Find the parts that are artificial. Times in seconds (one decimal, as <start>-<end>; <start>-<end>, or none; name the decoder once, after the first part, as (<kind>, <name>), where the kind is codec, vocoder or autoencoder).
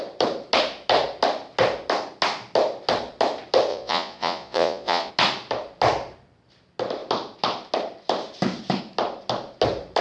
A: 3.7-5.1 (vocoder, Vocos)